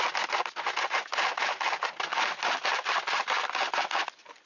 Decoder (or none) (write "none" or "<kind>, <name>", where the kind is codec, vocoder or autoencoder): none